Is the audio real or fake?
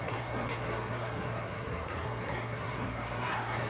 fake